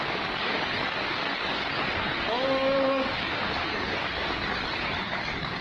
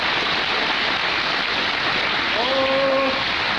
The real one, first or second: second